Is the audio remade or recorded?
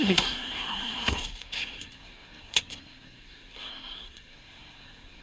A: remade